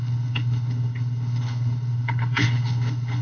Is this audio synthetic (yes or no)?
yes